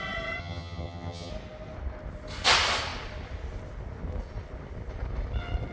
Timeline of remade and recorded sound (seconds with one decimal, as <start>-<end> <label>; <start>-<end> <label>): 0.0-0.4 recorded; 0.4-1.3 remade; 1.3-5.7 recorded